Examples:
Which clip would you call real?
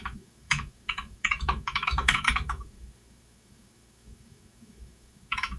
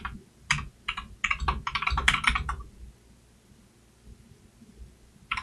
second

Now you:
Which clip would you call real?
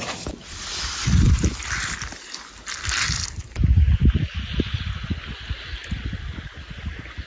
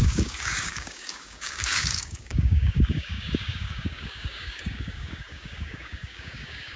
first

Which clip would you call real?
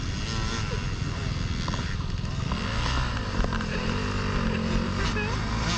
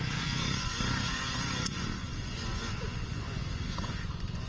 first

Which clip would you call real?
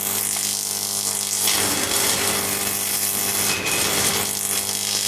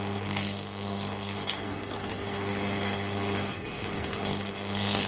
first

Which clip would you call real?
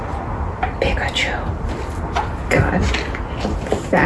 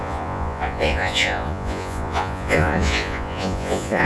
first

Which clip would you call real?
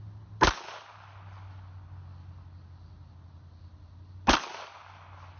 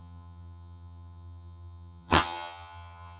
first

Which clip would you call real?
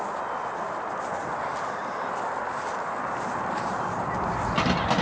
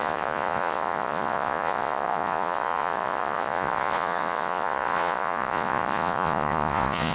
first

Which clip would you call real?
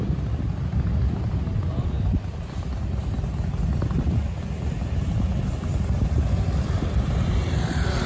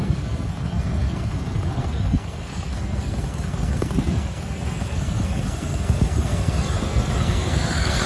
first